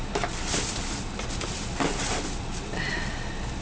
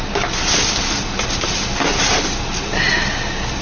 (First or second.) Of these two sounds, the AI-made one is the first